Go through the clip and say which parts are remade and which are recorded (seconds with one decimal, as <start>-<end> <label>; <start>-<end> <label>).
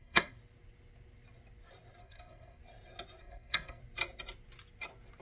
0.0-0.4 remade; 0.4-2.0 recorded; 2.0-2.6 remade; 2.6-3.2 recorded; 3.2-3.8 remade; 3.8-5.2 recorded